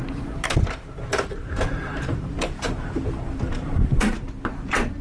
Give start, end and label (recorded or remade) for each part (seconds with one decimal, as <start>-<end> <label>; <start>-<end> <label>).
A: 0.0-1.1 recorded; 1.1-4.1 remade; 4.1-5.0 recorded